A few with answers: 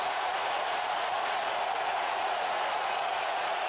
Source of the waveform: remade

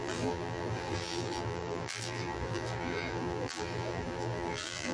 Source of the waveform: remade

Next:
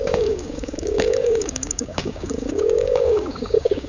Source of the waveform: remade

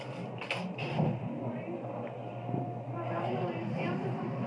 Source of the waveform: recorded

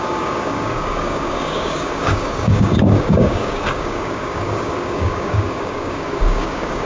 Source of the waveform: remade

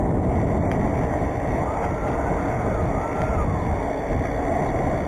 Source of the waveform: recorded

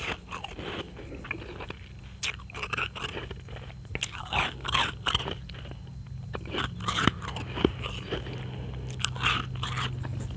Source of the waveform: recorded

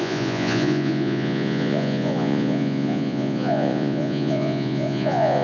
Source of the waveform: remade